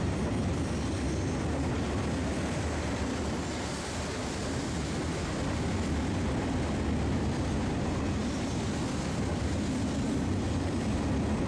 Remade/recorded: recorded